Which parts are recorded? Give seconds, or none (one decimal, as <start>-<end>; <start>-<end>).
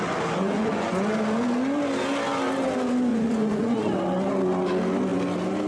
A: 0.0-0.4; 1.1-3.1; 4.0-5.7